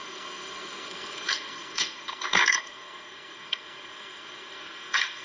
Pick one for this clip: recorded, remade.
remade